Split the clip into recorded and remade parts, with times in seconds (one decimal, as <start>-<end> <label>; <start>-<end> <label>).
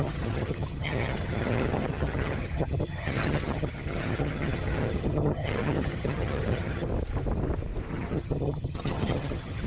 0.0-6.9 remade; 6.9-7.9 recorded; 7.9-9.7 remade